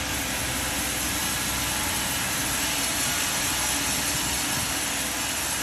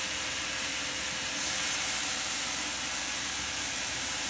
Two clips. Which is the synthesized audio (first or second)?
second